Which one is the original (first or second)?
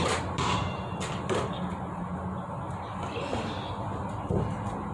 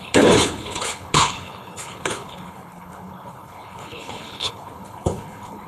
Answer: first